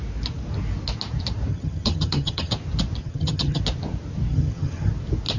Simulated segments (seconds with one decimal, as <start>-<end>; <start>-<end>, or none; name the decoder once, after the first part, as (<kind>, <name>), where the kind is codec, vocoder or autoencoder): 1.5-2.5 (vocoder, HiFi-GAN); 3.0-3.6; 4.3-4.9